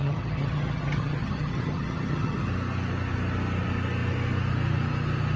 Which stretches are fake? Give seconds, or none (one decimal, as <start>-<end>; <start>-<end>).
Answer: 0.0-2.5